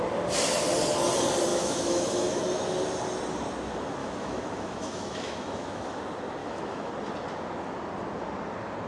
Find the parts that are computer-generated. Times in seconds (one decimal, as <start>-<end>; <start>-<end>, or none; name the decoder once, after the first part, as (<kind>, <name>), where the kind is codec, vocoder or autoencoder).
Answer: 1.5-2.4 (autoencoder, DAC-VAE); 4.0-6.0; 6.4-6.9